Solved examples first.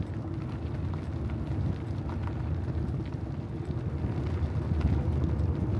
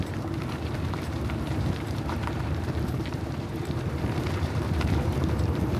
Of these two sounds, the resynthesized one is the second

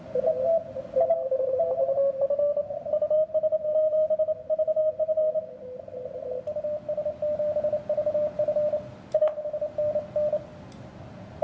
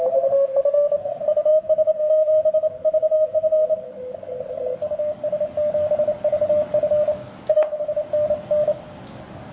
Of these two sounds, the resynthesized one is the second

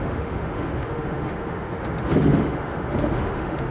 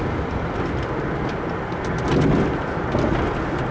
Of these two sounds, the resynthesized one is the first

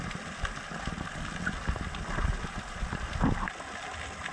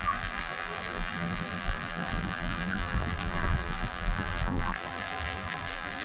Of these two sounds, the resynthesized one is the second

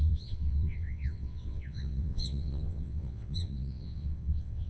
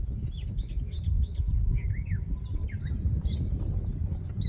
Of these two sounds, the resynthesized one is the first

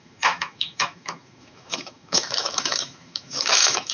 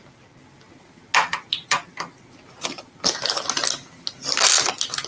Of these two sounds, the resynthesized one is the first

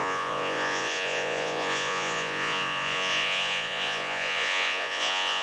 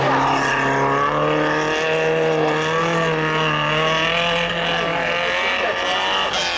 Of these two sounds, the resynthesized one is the first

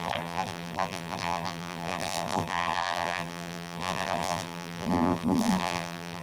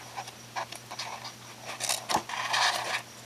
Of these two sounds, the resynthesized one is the first